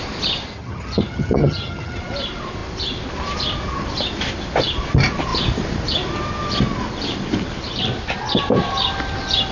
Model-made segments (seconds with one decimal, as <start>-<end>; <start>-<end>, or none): 0.6-2.0